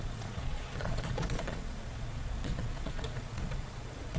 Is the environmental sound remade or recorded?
remade